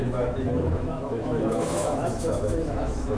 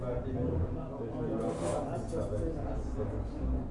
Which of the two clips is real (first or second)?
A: second